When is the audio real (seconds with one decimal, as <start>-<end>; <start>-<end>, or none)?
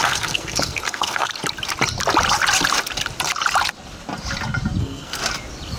1.3-4.8; 5.2-5.8